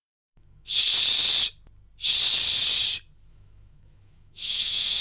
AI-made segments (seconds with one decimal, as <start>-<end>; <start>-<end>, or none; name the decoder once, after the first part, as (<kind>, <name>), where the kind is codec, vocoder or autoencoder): 0.0-0.7 (autoencoder, DAC-VAE); 3.3-5.0